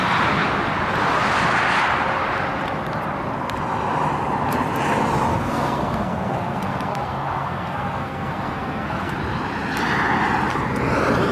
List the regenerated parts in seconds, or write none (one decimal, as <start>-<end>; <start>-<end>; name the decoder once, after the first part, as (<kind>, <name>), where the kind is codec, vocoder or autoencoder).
5.3-9.1 (codec, SNAC)